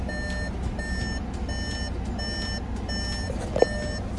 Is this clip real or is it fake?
real